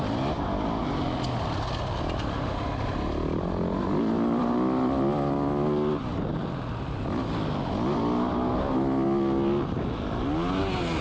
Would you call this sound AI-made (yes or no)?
no